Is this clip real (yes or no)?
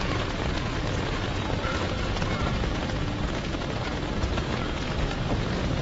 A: no